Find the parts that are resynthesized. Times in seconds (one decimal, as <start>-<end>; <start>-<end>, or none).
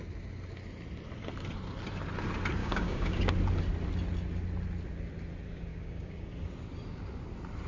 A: 2.6-3.3; 5.7-6.3